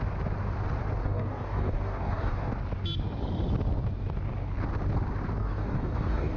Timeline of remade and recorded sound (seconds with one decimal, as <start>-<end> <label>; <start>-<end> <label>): 0.0-1.0 recorded; 1.0-2.5 remade; 2.5-5.4 recorded; 5.4-6.4 remade